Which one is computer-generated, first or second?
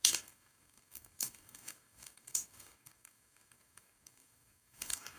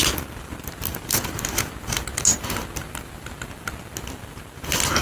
first